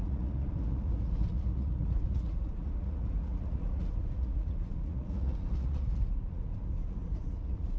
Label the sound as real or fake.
fake